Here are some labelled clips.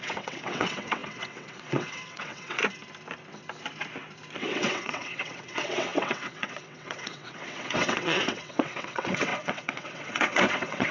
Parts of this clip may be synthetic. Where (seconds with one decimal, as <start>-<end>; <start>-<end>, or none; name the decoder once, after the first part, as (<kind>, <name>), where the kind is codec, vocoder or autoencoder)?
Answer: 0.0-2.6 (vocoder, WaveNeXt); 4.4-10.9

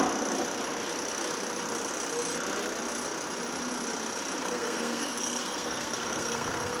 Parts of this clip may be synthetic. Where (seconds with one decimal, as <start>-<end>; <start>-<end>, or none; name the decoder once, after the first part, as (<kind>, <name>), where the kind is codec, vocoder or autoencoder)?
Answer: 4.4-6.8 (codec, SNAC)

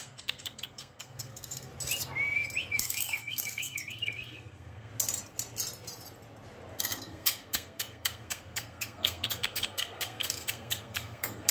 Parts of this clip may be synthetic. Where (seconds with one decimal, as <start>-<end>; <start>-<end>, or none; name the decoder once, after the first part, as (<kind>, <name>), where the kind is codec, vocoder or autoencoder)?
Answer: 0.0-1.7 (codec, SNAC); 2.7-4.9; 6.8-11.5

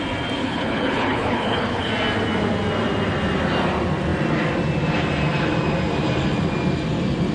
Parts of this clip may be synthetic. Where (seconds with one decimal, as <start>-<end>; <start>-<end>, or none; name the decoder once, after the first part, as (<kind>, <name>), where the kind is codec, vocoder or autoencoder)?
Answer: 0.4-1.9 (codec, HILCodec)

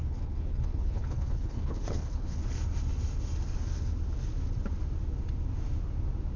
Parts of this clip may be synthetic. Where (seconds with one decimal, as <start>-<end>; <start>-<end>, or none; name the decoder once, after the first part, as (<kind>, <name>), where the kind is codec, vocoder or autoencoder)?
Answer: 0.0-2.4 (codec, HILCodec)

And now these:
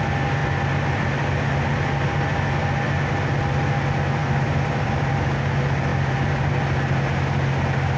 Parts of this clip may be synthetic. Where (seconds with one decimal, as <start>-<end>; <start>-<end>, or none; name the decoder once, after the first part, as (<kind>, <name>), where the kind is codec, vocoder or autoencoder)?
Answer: 4.2-5.1 (vocoder, BigVGAN v2); 5.9-6.5

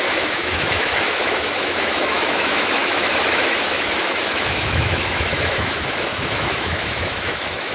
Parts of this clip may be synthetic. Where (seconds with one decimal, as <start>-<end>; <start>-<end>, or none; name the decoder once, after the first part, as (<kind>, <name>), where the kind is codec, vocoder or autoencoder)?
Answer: 0.0-7.7 (autoencoder, DAC-VAE)